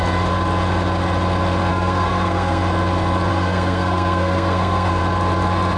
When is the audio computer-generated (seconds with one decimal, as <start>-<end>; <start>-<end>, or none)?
1.7-2.6; 3.3-5.0